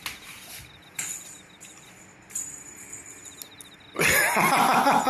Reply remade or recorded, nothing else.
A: recorded